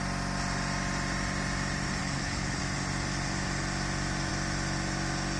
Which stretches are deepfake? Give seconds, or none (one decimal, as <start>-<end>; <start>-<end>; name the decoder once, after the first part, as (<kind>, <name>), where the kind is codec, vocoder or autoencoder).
2.0-2.6 (codec, HILCodec)